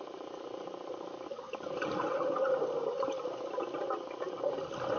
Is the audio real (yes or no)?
yes